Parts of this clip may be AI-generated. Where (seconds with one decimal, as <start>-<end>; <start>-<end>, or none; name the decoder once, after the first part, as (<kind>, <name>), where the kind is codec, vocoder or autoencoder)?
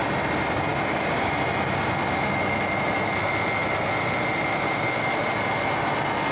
0.7-1.3 (codec, DAC)